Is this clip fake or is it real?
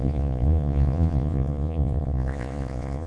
fake